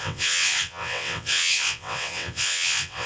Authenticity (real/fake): fake